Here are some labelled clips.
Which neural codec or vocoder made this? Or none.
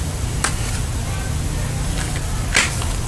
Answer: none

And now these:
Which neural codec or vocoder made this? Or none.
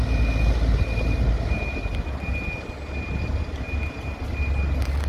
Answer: none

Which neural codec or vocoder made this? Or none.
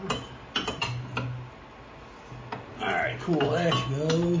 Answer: none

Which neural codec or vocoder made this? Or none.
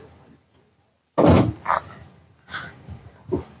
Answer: none